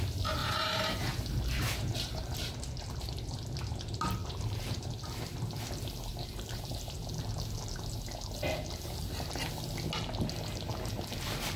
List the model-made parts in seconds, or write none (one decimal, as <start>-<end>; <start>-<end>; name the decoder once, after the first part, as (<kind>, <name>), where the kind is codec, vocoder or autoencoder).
0.4-2.5 (vocoder, BigVGAN v2); 4.2-4.9; 6.1-7.0